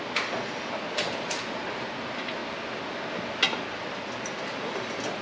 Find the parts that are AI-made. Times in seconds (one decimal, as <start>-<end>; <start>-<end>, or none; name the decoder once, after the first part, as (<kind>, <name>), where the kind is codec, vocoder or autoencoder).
none